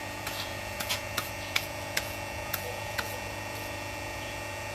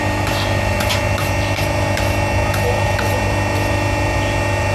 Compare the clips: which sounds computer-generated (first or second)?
first